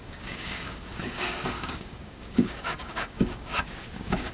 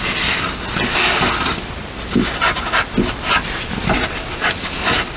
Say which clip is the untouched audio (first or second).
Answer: second